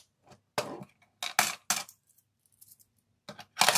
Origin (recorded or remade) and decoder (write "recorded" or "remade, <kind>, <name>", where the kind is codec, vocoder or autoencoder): recorded